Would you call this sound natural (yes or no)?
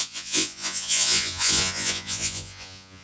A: no